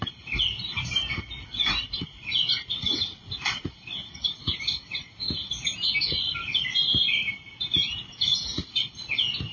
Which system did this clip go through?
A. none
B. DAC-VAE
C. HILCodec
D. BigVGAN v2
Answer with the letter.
D